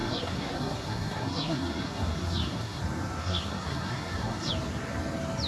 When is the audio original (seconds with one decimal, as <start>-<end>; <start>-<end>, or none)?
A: 2.8-3.2; 4.5-5.5